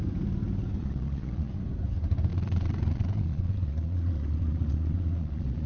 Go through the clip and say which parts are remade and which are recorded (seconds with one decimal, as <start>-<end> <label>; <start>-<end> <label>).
0.0-0.8 recorded; 0.8-1.5 remade; 1.5-2.3 recorded; 2.3-5.7 remade